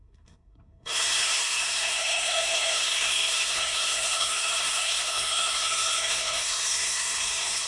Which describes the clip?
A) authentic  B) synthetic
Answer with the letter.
B